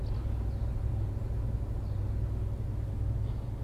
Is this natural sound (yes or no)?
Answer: yes